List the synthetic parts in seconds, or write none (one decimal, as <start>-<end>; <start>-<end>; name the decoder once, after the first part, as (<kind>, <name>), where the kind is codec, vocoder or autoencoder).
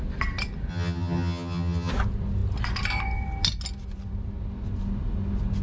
0.7-1.9 (vocoder, HiFi-GAN)